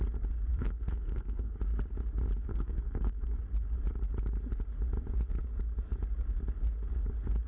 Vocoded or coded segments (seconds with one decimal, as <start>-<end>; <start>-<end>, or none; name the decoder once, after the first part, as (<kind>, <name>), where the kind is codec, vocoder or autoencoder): 0.5-1.5 (codec, SNAC); 2.5-3.4